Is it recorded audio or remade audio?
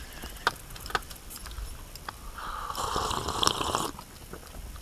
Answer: recorded